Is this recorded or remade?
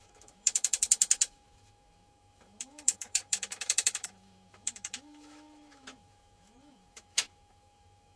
remade